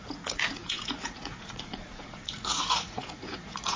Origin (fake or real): fake